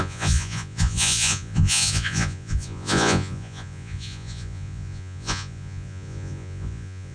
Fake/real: fake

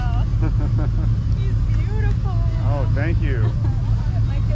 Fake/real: real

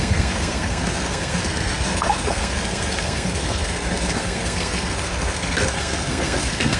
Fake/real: fake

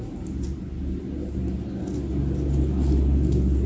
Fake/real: real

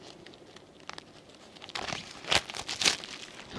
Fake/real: real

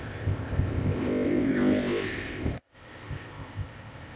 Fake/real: fake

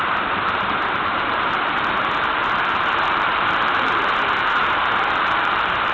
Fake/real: fake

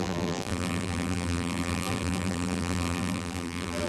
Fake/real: fake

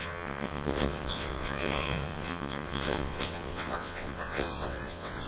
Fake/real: fake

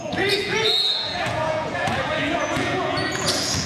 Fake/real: fake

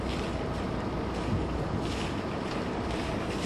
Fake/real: real